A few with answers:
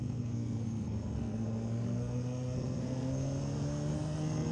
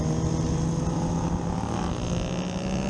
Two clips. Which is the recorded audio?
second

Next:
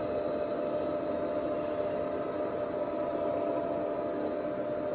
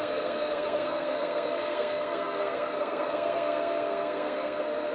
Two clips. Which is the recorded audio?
first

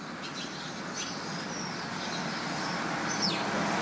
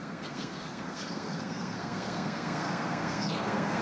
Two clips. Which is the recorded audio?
first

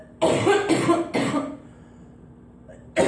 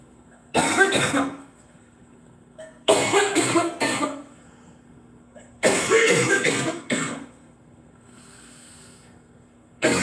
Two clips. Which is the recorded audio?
first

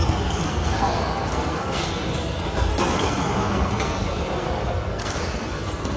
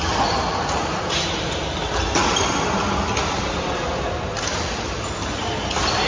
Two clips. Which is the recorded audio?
second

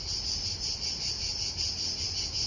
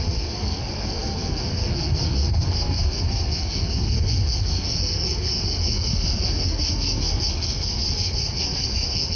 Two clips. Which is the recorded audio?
first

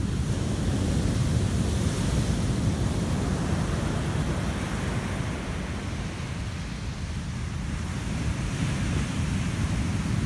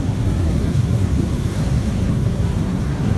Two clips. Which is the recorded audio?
first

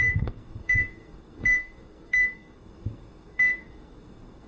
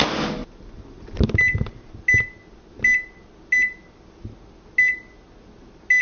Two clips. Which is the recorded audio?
second